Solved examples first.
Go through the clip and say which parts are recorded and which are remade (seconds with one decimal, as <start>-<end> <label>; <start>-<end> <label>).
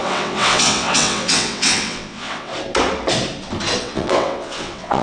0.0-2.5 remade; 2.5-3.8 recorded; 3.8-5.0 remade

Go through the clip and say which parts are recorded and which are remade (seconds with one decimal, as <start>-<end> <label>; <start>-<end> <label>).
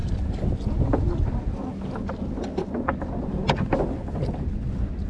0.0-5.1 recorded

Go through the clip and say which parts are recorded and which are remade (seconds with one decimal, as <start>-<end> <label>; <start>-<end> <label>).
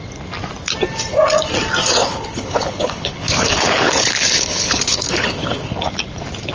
0.0-2.0 recorded; 2.0-5.9 remade; 5.9-6.5 recorded